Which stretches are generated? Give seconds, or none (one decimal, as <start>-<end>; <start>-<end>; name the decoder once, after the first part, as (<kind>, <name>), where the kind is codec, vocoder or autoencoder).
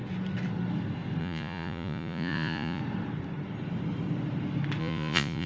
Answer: 1.2-2.8 (vocoder, Vocos); 4.8-5.5